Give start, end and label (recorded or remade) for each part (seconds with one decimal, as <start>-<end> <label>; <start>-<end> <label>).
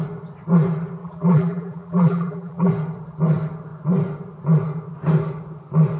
0.0-1.0 recorded; 1.0-2.7 remade; 2.7-6.0 recorded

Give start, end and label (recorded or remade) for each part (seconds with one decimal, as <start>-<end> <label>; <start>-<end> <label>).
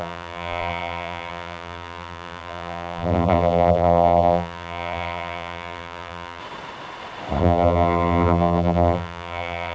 0.0-6.4 remade; 6.4-7.4 recorded; 7.4-9.7 remade